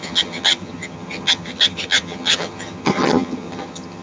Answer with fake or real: fake